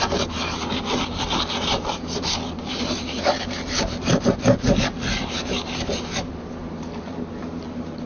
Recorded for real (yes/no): no